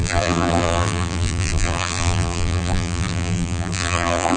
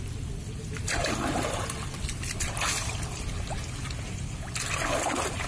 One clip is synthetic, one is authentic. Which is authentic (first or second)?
second